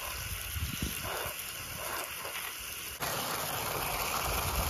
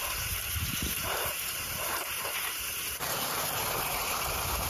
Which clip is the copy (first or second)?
second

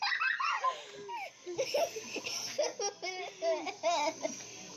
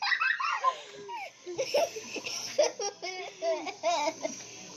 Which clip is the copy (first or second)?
second